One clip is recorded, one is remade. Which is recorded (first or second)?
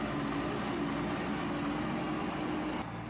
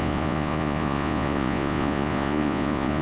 first